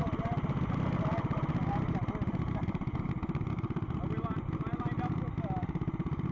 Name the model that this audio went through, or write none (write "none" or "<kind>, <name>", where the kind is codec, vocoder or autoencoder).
none